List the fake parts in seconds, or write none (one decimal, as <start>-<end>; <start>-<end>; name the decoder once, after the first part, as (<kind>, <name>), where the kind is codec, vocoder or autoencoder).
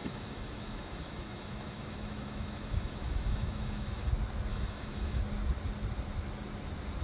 0.0-4.1 (autoencoder, DAC-VAE); 4.5-5.2